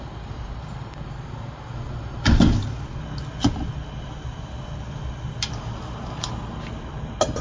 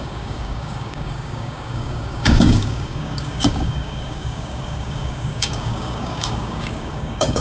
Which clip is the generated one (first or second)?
second